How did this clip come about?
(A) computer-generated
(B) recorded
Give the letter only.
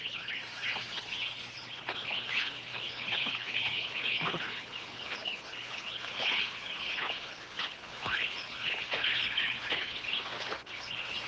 A